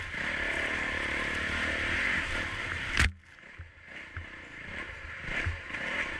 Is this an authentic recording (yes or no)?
yes